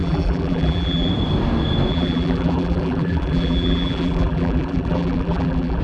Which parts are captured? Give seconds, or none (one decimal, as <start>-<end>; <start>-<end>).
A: 1.1-1.9